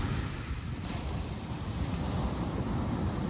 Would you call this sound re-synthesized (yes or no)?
no